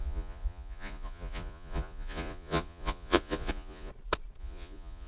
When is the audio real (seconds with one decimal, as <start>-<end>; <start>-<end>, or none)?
3.9-4.4

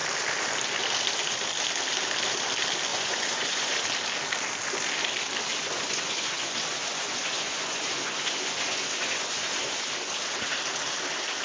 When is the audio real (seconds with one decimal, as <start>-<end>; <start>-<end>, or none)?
0.0-2.9; 3.8-5.5; 10.1-11.4

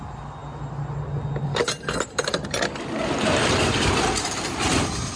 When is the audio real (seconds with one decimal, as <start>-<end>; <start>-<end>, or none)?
0.0-5.2

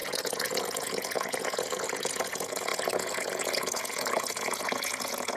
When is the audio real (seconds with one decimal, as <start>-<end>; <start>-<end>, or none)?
none

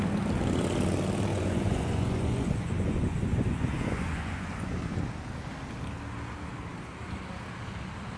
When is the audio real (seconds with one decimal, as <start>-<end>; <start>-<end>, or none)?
0.0-1.3; 4.7-8.2

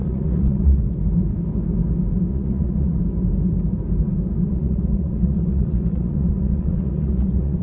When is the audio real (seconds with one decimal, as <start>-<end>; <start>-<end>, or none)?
0.8-2.3; 3.0-4.5

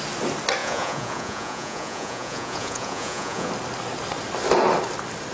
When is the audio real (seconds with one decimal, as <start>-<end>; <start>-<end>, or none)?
0.0-0.6; 3.5-5.3

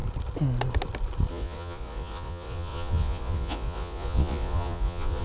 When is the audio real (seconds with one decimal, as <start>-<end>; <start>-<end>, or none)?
0.0-1.3